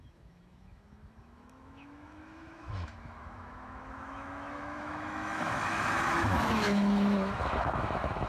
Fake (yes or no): yes